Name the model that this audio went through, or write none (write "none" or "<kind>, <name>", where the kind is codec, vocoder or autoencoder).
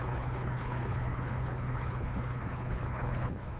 codec, HILCodec